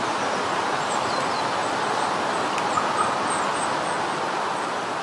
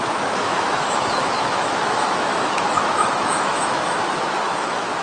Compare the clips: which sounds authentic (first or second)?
first